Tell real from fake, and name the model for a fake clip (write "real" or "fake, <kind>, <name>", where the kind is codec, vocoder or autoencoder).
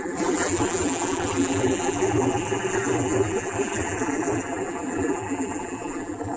fake, vocoder, BigVGAN v2